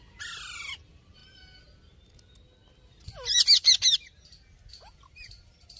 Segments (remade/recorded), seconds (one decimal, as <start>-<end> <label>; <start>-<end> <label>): 0.0-5.8 recorded